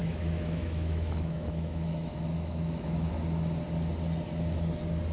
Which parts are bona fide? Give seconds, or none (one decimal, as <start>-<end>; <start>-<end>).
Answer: 3.1-5.1